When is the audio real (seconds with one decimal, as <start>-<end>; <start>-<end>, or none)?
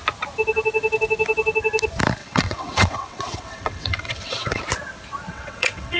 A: 0.0-2.2; 4.6-5.3